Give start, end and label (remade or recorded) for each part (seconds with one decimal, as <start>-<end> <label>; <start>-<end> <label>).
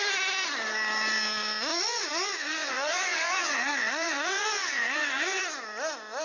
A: 0.0-1.7 recorded; 1.7-5.4 remade; 5.4-6.2 recorded